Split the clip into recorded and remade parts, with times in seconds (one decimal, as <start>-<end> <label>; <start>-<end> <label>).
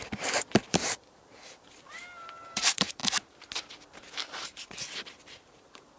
0.0-3.0 remade; 3.0-4.4 recorded; 4.4-6.0 remade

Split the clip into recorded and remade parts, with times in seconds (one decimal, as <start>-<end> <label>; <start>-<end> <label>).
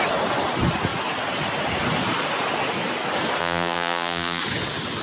0.0-3.4 recorded; 3.4-4.4 remade; 4.4-5.0 recorded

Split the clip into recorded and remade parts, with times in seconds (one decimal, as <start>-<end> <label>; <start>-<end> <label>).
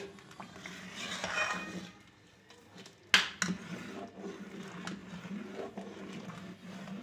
0.0-7.0 recorded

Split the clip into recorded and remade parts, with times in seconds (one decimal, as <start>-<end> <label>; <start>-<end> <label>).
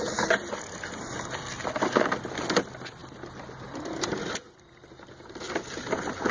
0.0-3.0 recorded; 3.0-5.3 remade; 5.3-6.3 recorded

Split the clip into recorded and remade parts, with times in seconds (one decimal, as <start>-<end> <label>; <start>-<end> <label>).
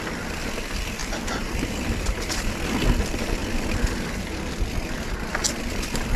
0.0-1.0 recorded; 1.0-2.4 remade; 2.4-6.2 recorded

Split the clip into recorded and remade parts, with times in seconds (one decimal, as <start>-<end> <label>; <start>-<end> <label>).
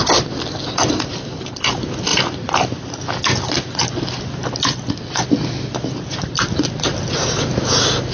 0.0-2.1 recorded; 2.1-3.0 remade; 3.0-8.1 recorded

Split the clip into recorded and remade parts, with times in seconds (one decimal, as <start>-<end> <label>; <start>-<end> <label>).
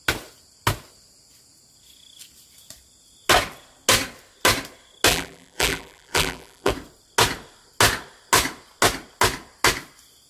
0.0-5.1 recorded; 5.1-6.7 remade; 6.7-10.3 recorded